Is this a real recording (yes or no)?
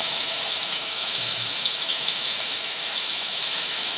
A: no